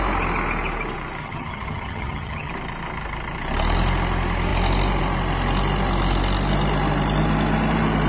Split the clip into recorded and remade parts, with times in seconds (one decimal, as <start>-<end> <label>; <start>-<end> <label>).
0.0-1.2 recorded; 1.2-2.5 remade; 2.5-8.1 recorded